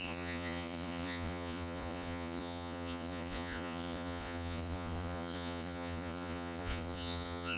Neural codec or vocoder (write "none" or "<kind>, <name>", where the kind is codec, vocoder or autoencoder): vocoder, Vocos